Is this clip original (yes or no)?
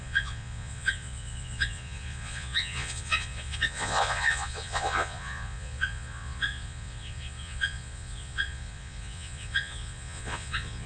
no